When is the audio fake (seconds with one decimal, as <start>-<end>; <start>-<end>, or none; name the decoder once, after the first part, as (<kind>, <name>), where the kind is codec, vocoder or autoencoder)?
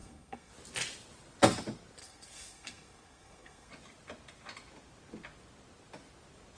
0.0-0.5 (codec, SNAC); 2.0-3.7